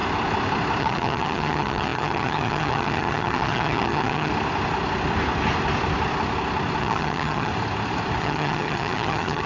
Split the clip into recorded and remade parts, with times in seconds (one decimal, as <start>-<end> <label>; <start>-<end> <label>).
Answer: 0.0-0.8 recorded; 0.8-4.3 remade; 4.3-6.8 recorded; 6.8-7.5 remade; 7.5-8.2 recorded; 8.2-9.5 remade